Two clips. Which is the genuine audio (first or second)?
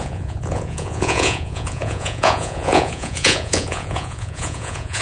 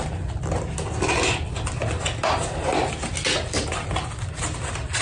second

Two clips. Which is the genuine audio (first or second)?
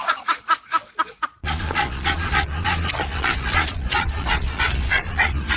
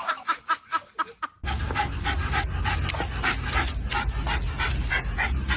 second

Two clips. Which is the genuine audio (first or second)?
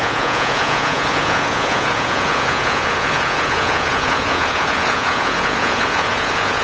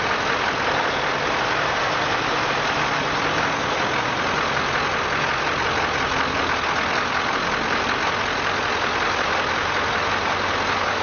second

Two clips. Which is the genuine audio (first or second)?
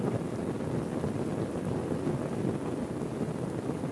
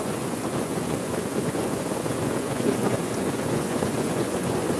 first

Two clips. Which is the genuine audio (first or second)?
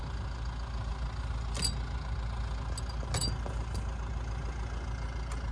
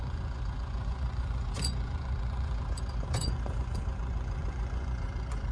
first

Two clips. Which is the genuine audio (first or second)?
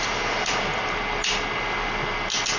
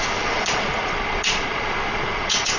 first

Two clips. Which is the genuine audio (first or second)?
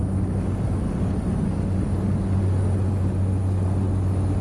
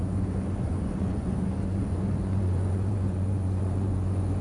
first